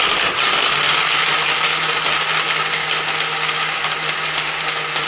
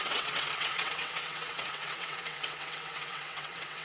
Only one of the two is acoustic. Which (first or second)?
first